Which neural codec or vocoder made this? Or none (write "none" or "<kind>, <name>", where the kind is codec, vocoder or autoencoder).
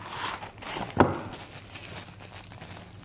none